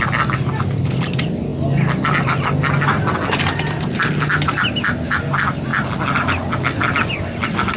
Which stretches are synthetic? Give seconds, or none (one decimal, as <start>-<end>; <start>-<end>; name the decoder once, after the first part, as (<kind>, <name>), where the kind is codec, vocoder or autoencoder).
none